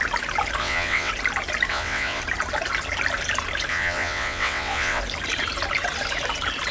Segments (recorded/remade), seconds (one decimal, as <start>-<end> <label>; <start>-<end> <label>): 0.0-0.6 recorded; 0.6-1.1 remade; 1.1-1.7 recorded; 1.7-2.2 remade; 2.2-3.7 recorded; 3.7-5.0 remade; 5.0-6.7 recorded